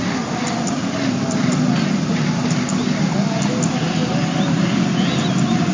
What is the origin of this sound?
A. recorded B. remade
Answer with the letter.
A